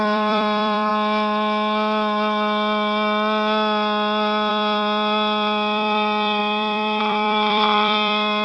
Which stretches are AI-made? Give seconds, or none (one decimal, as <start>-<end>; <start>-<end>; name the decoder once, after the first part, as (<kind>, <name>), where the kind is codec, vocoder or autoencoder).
0.0-0.9 (vocoder, BigVGAN v2); 4.5-8.4